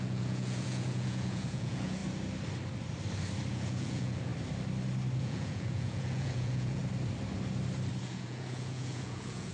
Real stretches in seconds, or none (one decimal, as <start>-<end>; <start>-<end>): 2.0-3.5; 4.3-5.2; 6.8-8.0